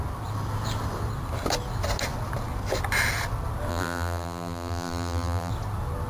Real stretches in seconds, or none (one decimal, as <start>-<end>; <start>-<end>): 0.0-3.7; 5.5-6.1